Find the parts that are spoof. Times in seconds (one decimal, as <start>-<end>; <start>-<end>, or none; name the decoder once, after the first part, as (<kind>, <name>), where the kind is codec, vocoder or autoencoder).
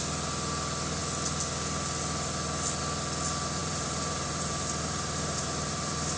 3.6-6.2 (vocoder, BigVGAN v2)